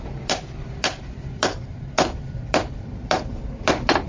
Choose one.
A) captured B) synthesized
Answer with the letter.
B